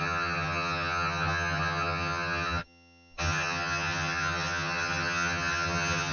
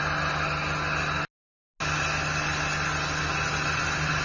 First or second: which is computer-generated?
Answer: first